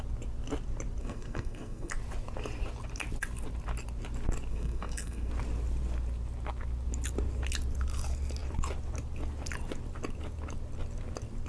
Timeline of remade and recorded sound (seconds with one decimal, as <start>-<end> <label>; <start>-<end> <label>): 0.0-1.0 recorded; 1.0-1.9 remade; 1.9-4.5 recorded; 4.5-5.3 remade; 5.3-11.5 recorded